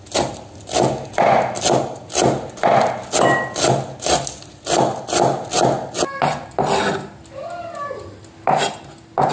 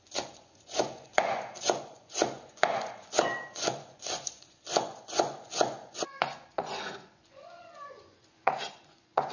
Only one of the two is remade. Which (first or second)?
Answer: second